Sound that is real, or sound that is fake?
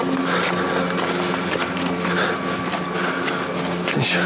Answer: real